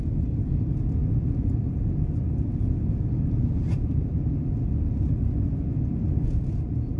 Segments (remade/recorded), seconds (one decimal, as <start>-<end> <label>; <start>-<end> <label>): 0.0-7.0 recorded